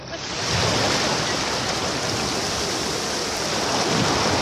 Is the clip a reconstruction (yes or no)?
no